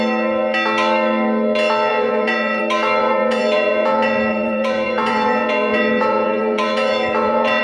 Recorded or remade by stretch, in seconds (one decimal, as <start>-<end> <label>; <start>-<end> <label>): 0.0-1.9 recorded; 1.9-2.6 remade; 2.6-3.0 recorded; 3.0-7.6 remade